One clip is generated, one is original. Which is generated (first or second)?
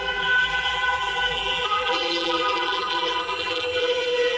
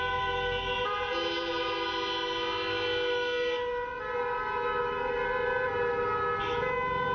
first